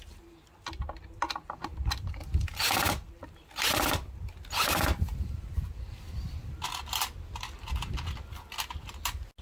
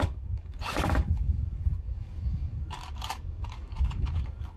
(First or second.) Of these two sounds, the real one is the first